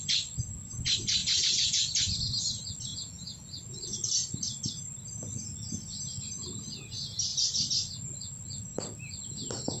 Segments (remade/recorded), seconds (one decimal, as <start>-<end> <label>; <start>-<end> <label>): 0.0-1.2 recorded; 1.2-1.9 remade; 1.9-2.9 recorded; 2.9-3.5 remade; 3.5-9.8 recorded

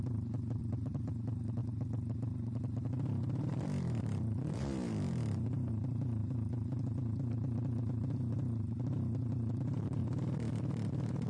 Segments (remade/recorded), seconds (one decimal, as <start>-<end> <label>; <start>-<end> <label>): 0.0-0.6 recorded; 0.6-1.1 remade; 1.1-11.3 recorded

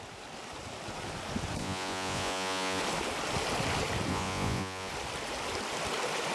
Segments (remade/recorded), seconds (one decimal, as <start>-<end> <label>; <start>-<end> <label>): 0.0-1.6 recorded; 1.6-2.8 remade; 2.8-4.1 recorded; 4.1-4.9 remade; 4.9-6.3 recorded

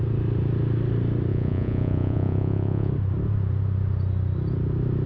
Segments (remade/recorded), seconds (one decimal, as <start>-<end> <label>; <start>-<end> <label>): 0.0-1.3 recorded; 1.3-2.9 remade; 2.9-5.1 recorded

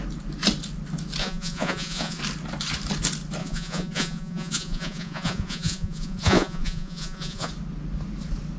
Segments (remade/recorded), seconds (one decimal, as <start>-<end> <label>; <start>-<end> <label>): 0.0-1.2 recorded; 1.2-2.2 remade; 2.2-3.4 recorded; 3.4-7.5 remade; 7.5-8.6 recorded

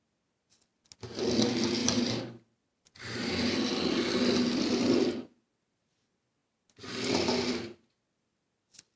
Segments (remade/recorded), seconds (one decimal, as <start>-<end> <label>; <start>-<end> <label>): 0.0-1.8 recorded; 1.8-3.3 remade; 3.3-9.0 recorded

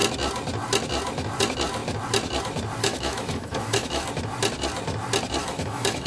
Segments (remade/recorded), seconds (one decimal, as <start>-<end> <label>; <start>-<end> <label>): 0.0-2.8 recorded; 2.8-4.1 remade; 4.1-5.4 recorded; 5.4-6.1 remade